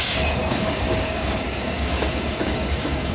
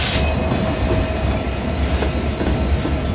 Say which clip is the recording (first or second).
second